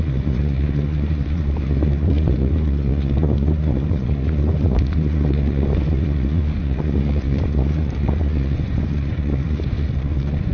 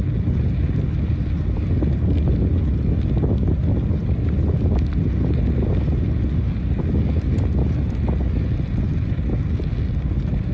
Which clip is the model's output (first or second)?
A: first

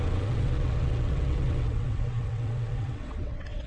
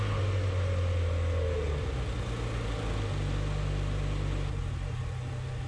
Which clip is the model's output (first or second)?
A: first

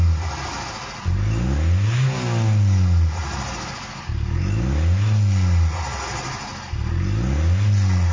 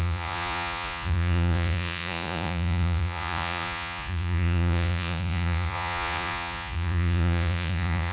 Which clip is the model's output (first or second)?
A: second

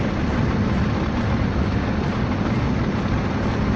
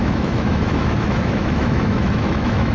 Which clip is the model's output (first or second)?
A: second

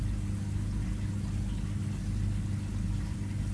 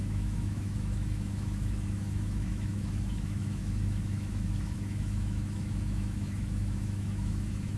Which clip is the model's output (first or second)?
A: second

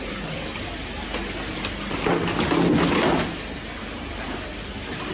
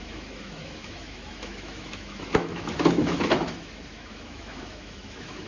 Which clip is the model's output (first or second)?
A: second